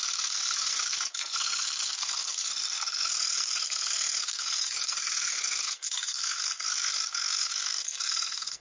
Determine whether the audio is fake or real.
fake